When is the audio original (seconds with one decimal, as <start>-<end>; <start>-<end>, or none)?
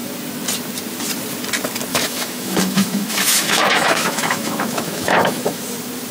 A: 0.0-1.9; 5.6-6.1